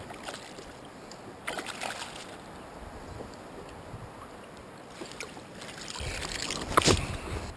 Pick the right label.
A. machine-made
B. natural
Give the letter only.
B